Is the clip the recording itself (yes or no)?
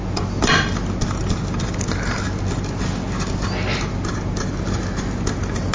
yes